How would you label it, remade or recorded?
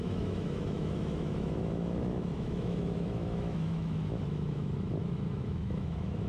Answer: remade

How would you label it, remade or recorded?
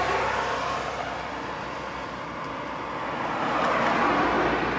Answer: recorded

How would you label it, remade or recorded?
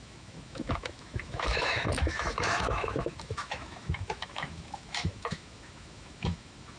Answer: remade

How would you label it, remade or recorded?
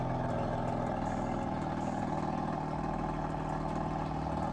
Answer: recorded